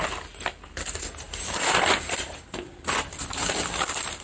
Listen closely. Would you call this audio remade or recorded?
recorded